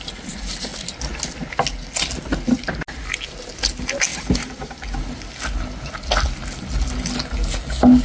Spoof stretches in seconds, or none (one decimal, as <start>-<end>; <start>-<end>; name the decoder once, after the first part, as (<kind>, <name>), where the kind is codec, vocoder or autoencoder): 4.1-4.7 (vocoder, BigVGAN v2)